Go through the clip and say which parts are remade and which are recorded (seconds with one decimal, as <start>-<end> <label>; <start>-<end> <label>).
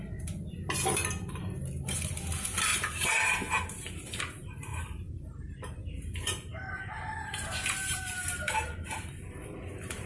0.0-2.7 recorded; 2.7-4.2 remade; 4.2-4.7 recorded; 4.7-10.1 remade